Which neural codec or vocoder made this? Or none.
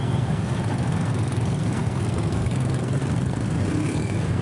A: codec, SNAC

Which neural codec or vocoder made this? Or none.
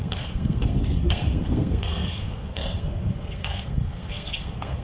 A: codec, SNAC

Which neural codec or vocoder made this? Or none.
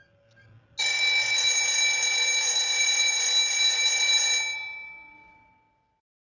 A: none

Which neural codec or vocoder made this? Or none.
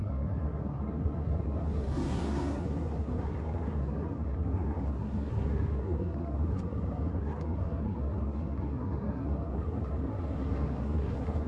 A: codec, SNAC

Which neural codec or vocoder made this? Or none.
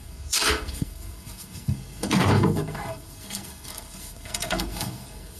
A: codec, SNAC